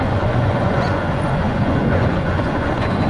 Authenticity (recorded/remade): remade